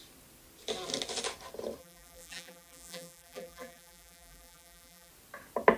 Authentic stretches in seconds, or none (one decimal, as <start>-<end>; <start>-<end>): 0.0-1.8; 5.1-5.8